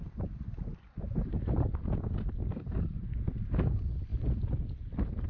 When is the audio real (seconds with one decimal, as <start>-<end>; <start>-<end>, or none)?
0.0-5.3